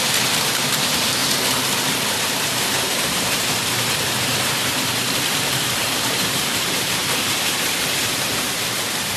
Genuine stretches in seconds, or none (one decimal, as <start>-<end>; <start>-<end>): 1.2-2.1